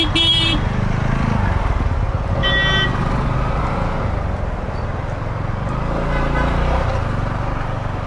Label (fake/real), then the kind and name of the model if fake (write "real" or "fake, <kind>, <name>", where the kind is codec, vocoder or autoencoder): real